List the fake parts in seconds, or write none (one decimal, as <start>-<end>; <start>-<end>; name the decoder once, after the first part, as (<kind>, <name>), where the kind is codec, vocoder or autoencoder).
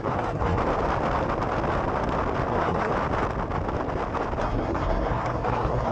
0.0-0.6 (codec, SNAC); 2.5-2.9; 4.4-5.9